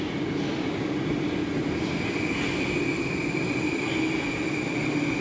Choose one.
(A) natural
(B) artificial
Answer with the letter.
A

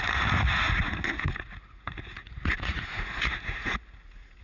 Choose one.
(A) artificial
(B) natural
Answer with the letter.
A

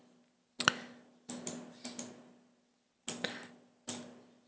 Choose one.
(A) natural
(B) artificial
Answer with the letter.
A